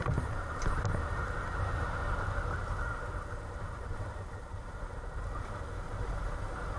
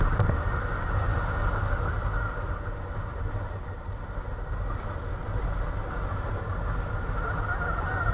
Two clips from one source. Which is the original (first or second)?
second